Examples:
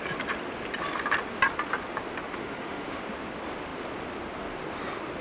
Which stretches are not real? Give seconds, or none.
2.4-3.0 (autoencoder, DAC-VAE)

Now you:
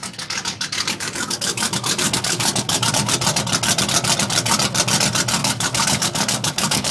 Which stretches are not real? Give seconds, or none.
0.0-2.9 (codec, DAC); 5.4-6.9

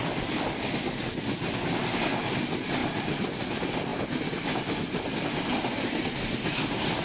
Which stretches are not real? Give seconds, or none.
none

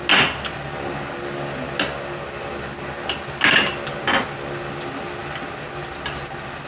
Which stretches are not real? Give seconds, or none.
none

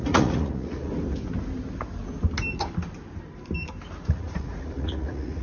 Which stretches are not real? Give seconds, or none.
0.0-0.9 (vocoder, Vocos); 4.1-5.4

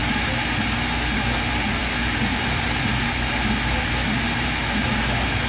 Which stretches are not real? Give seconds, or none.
none